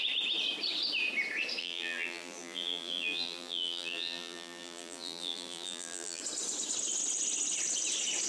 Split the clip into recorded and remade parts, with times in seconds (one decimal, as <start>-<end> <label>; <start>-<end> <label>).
0.0-1.6 recorded; 1.6-6.2 remade; 6.2-8.3 recorded